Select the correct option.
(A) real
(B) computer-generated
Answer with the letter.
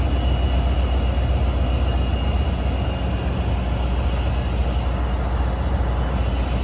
A